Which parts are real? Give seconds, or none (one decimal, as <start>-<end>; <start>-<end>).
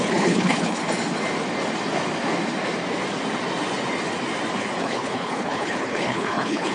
0.8-4.8